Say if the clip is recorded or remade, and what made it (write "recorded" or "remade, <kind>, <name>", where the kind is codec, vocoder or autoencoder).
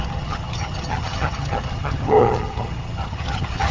remade, vocoder, HiFi-GAN